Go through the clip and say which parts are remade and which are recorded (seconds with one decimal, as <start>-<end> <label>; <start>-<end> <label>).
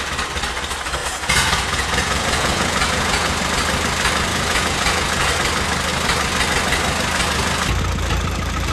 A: 0.0-1.0 recorded; 1.0-3.4 remade; 3.4-4.3 recorded; 4.3-5.3 remade; 5.3-8.7 recorded